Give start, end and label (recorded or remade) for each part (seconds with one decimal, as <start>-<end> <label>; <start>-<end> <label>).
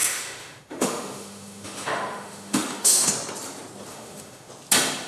0.0-3.1 remade; 3.1-3.9 recorded; 3.9-4.5 remade; 4.5-5.1 recorded